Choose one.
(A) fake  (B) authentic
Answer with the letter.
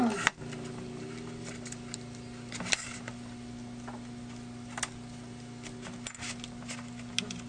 B